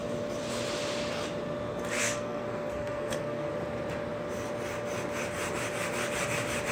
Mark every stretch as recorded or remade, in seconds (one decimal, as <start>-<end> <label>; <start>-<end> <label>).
0.0-1.9 recorded; 1.9-3.5 remade; 3.5-6.7 recorded